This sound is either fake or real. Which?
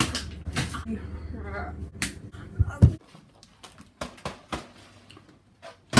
real